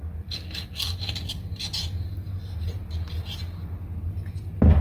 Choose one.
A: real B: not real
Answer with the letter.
A